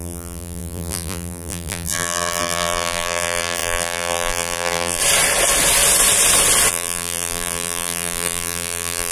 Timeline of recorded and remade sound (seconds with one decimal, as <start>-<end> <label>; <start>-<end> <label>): 0.0-5.0 remade; 5.0-6.7 recorded; 6.7-9.1 remade